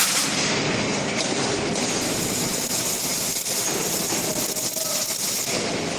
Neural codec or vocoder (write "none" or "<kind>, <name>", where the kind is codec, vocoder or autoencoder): none